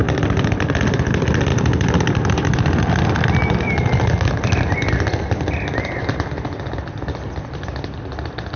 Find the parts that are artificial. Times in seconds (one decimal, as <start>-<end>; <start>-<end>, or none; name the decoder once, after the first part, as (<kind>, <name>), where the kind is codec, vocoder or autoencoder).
none